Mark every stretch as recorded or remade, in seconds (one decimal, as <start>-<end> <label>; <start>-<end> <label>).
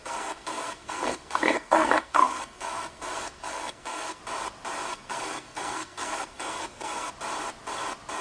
0.0-4.2 remade; 4.2-4.9 recorded; 4.9-7.1 remade; 7.1-8.2 recorded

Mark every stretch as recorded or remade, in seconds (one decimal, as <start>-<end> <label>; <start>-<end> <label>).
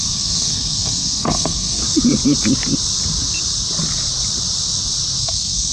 0.0-1.8 remade; 1.8-5.2 recorded; 5.2-5.7 remade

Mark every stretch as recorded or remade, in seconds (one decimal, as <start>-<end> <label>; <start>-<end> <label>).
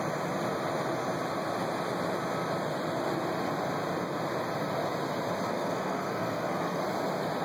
0.0-5.5 recorded; 5.5-6.8 remade; 6.8-7.4 recorded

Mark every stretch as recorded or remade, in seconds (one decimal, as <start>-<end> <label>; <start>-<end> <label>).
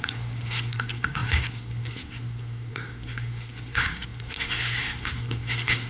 0.0-5.9 remade